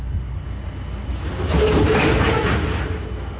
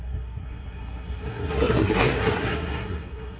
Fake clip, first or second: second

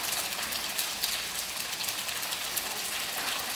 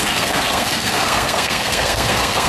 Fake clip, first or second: second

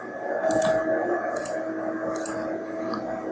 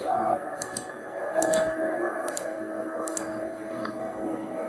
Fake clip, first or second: second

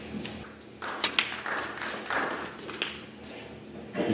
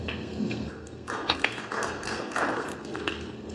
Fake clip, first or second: second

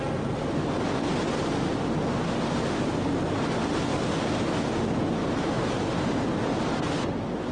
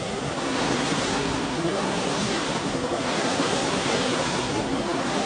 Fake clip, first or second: second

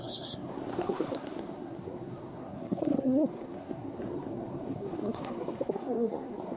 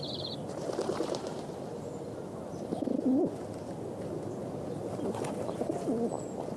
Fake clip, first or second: first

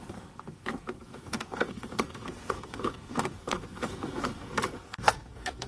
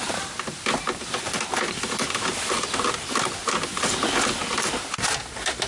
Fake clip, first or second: first